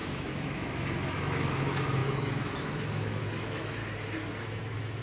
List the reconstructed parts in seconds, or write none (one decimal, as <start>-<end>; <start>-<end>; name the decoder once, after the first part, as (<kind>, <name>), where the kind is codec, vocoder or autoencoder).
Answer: 0.0-3.8 (autoencoder, DAC-VAE); 4.4-5.0